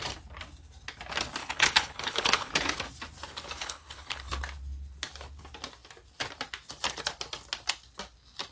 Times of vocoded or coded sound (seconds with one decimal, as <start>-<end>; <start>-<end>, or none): 1.4-2.5; 3.6-4.3